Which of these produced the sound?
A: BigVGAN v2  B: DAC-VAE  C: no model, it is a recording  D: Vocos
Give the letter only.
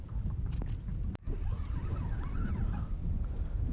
C